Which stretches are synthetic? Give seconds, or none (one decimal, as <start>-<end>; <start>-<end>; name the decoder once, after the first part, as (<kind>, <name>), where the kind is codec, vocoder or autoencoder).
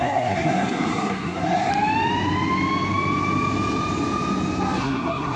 0.0-1.7 (codec, SNAC); 4.8-5.4